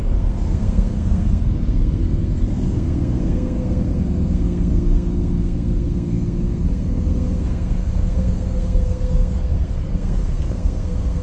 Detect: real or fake fake